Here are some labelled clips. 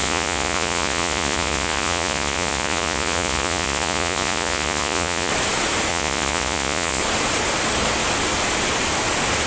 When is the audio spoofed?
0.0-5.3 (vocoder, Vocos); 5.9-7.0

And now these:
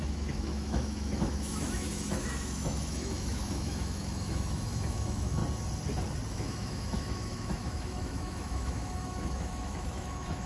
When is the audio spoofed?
0.0-5.4 (autoencoder, DAC-VAE); 6.3-10.5